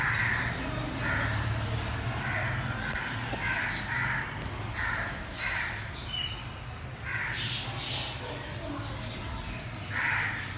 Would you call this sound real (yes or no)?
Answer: yes